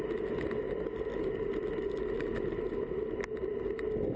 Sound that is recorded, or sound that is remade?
recorded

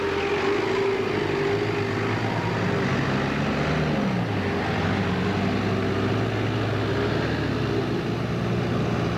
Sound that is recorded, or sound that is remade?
recorded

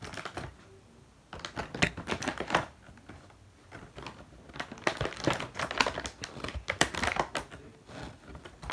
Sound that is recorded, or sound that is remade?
recorded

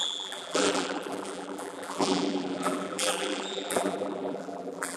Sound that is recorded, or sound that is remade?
remade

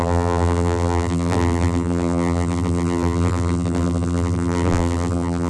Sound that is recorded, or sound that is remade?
remade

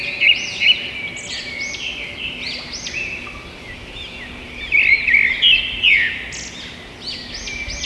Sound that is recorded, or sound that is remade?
recorded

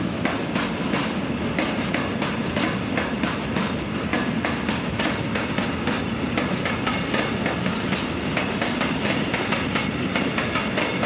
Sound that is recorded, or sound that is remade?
recorded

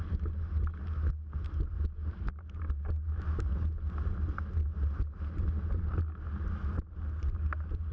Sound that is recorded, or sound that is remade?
recorded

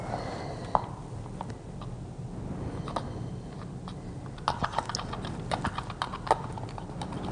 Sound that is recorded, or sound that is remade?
recorded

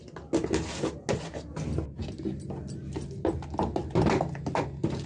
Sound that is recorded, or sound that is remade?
recorded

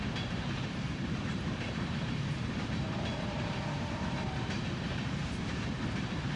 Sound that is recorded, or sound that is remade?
remade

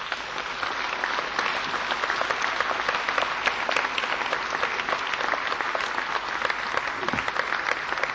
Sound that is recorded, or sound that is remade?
recorded